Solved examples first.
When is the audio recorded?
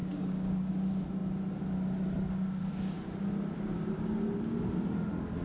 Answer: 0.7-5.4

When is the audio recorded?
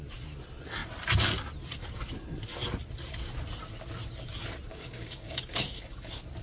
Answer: 0.0-4.7; 5.8-6.4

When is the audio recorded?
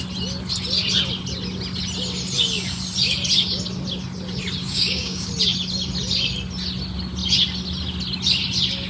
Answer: 0.0-4.6; 5.3-8.9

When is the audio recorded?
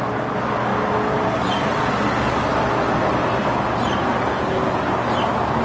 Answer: 0.0-5.6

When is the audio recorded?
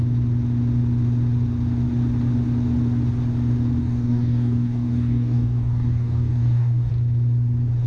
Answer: 0.0-3.8; 6.9-7.9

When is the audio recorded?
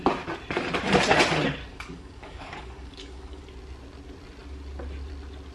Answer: 0.0-1.7; 3.4-5.5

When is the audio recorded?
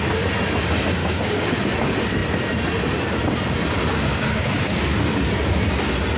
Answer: 0.0-1.0; 1.6-4.1; 4.8-6.2